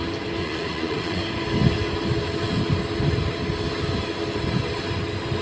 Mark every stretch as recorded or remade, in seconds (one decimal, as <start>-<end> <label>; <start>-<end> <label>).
0.0-0.4 recorded; 0.4-1.2 remade; 1.2-5.4 recorded